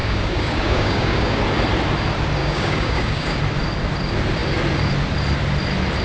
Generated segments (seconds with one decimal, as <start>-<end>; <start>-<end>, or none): 0.0-1.4; 2.4-3.4

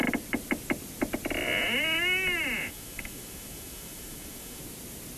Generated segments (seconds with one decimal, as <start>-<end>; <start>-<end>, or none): 2.6-4.6